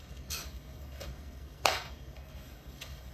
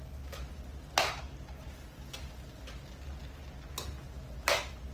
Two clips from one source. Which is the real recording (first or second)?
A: second